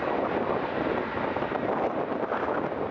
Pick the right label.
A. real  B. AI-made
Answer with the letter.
A